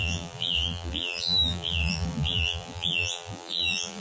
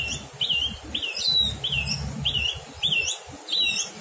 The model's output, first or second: first